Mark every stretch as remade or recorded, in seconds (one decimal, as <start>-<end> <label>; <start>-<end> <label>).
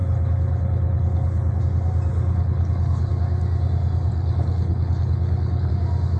0.0-1.6 remade; 1.6-2.1 recorded; 2.1-3.1 remade; 3.1-4.1 recorded; 4.1-5.7 remade; 5.7-6.2 recorded